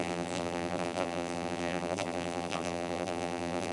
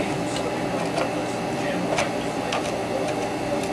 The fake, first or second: first